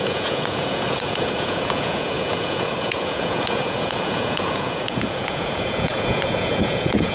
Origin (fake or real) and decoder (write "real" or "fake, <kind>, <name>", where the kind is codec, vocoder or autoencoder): fake, vocoder, Vocos